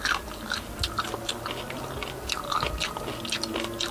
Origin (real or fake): real